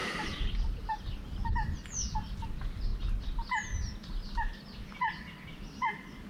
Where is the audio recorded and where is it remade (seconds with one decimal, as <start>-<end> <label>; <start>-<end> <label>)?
0.0-1.2 remade; 1.2-6.3 recorded